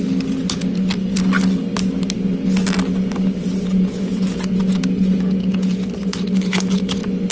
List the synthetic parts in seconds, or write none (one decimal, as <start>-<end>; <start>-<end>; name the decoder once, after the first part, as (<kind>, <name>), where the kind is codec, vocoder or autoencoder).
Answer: 3.7-5.7 (vocoder, Vocos)